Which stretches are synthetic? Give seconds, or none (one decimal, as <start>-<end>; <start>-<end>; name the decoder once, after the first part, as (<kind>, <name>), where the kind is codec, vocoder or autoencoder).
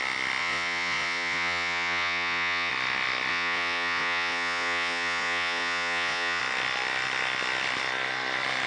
0.4-2.7 (vocoder, Vocos); 3.3-6.4